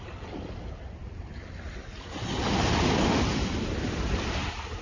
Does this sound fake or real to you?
real